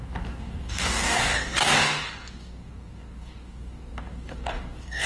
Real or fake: fake